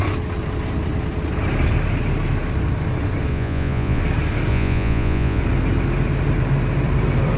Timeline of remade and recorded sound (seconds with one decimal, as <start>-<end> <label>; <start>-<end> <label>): 0.0-3.3 recorded; 3.3-4.0 remade; 4.0-4.5 recorded; 4.5-5.4 remade; 5.4-7.4 recorded